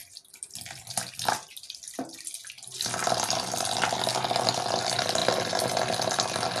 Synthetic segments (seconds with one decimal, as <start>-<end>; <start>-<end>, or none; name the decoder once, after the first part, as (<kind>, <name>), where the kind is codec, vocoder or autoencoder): none